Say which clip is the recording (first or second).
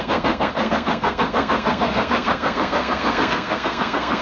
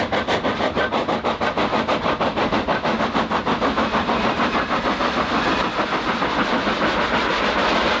second